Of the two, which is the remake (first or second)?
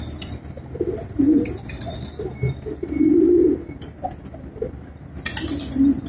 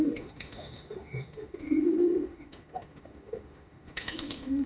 second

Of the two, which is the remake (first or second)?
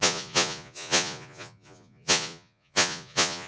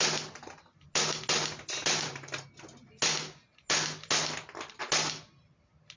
first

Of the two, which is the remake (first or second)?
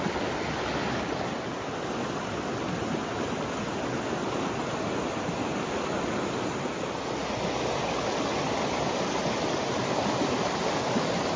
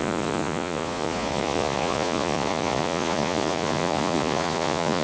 second